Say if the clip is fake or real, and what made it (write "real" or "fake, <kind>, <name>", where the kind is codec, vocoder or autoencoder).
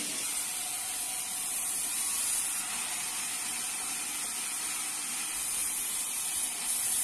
real